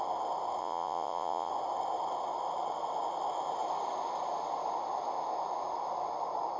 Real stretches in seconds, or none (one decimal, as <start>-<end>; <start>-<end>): 0.0-0.6; 1.5-6.6